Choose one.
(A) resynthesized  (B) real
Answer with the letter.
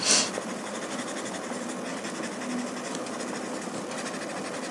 B